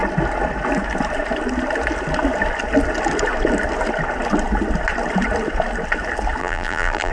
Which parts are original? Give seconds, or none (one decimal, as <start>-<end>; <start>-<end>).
0.0-6.4